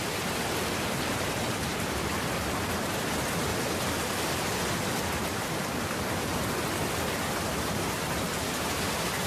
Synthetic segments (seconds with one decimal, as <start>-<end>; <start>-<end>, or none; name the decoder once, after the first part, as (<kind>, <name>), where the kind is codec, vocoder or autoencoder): 1.7-2.2 (vocoder, BigVGAN v2)